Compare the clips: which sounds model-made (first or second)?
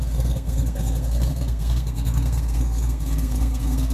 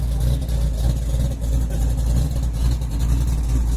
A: first